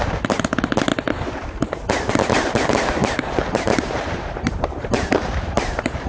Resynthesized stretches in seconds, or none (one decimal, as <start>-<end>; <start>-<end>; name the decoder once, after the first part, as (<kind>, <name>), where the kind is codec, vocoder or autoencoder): 3.0-6.1 (vocoder, BigVGAN v2)